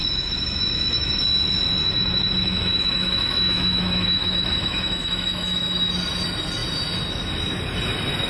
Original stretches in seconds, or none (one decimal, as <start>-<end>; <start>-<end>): 1.2-1.8; 5.9-8.3